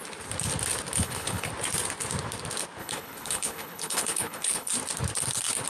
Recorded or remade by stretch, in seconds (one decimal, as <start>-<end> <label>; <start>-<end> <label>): 0.0-1.0 recorded; 1.0-1.5 remade; 1.5-2.8 recorded; 2.8-4.7 remade; 4.7-5.7 recorded